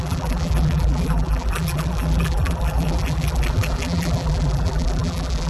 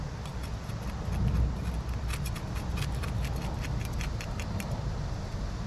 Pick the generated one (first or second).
first